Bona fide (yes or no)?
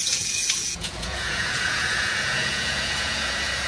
no